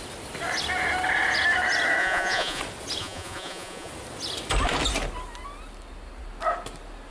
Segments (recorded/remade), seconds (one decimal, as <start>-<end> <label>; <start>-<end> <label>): 0.0-2.0 recorded; 2.0-2.6 remade; 2.6-3.0 recorded; 3.0-3.9 remade; 3.9-7.1 recorded